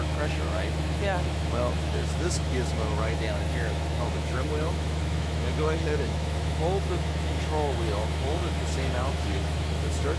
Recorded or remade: remade